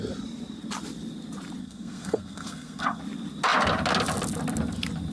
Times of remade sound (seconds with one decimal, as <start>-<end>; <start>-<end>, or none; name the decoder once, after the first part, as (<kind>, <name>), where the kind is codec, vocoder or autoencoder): 1.6-3.0 (codec, SNAC)